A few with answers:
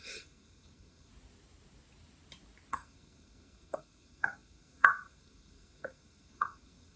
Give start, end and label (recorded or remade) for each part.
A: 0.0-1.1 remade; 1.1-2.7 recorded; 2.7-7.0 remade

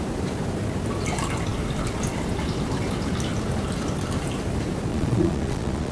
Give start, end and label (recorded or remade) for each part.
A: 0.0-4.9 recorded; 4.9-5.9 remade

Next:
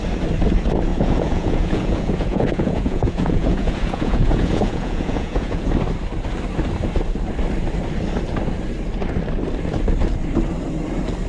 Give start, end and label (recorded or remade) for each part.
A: 0.0-0.9 recorded; 0.9-5.7 remade; 5.7-11.3 recorded

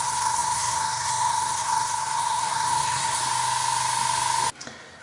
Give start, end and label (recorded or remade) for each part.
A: 0.0-3.2 remade; 3.2-5.0 recorded

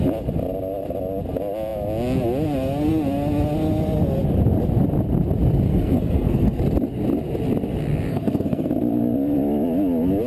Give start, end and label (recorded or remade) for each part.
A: 0.0-5.7 recorded; 5.7-6.6 remade; 6.6-8.1 recorded; 8.1-8.7 remade; 8.7-10.3 recorded